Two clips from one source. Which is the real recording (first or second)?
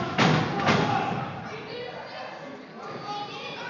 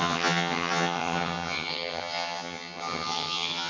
first